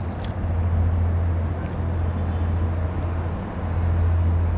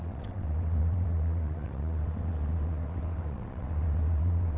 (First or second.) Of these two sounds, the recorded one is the first